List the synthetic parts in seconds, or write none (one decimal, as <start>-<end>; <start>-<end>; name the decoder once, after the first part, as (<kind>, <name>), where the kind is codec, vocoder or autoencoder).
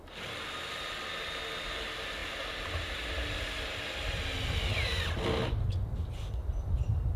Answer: none